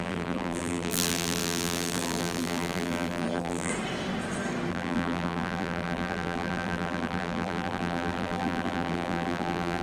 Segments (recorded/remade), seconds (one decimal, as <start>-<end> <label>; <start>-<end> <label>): 0.0-3.7 remade; 3.7-4.7 recorded; 4.7-9.8 remade